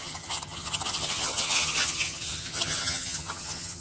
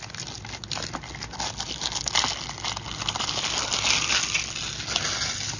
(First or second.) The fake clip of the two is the first